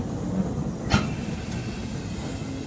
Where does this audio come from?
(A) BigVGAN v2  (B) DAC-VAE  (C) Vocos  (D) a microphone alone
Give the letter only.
D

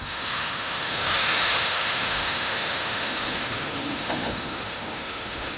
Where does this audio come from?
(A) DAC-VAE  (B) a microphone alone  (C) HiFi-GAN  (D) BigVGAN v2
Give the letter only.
A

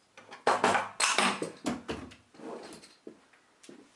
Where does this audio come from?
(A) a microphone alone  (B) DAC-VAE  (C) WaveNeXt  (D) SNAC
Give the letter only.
A